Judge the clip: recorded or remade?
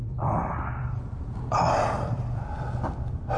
remade